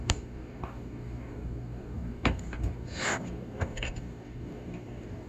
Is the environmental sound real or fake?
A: fake